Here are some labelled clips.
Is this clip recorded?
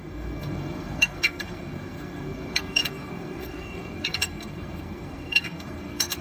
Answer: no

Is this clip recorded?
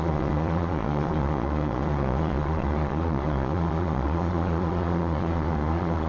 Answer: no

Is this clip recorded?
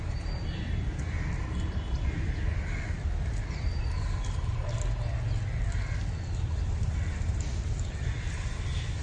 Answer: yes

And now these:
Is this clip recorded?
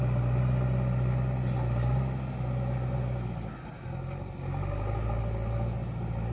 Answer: yes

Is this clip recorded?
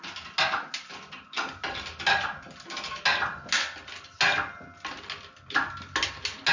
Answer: yes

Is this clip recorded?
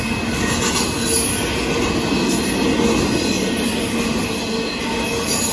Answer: yes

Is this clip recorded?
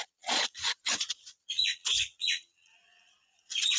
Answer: no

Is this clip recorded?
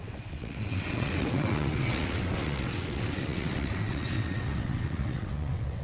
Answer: no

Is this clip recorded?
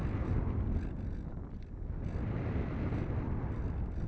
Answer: yes